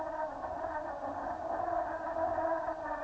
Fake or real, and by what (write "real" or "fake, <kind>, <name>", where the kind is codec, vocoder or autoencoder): real